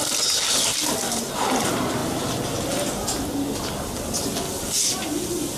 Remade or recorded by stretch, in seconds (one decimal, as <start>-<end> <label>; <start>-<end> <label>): 0.0-5.6 recorded